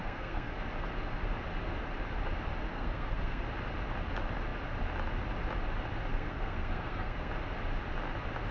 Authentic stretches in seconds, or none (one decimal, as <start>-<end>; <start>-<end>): 0.6-2.7; 3.4-6.1; 7.3-8.5